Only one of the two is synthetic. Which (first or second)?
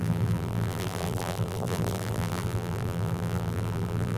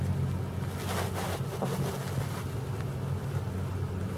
first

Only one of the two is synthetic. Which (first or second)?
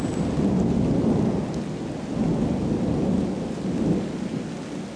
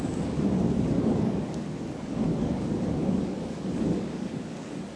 second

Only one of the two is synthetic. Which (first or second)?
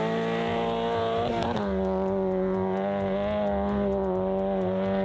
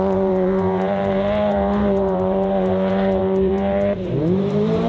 second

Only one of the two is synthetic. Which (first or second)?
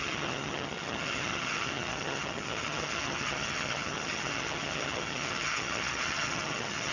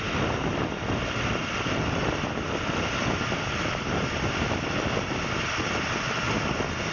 first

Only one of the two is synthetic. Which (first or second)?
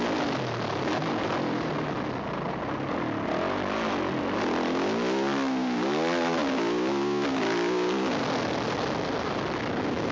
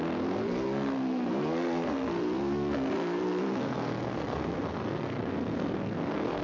second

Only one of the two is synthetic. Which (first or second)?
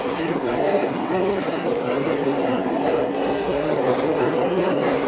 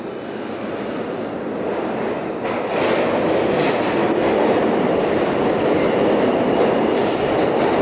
first